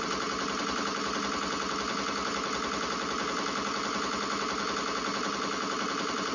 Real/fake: real